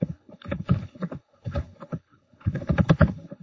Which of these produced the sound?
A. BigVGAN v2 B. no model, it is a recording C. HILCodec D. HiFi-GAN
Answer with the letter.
C